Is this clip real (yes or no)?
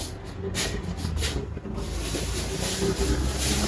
yes